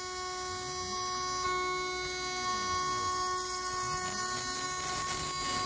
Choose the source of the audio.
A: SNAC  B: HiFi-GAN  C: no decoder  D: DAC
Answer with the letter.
C